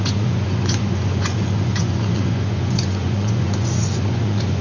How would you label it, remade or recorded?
remade